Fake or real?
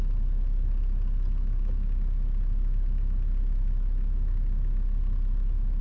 real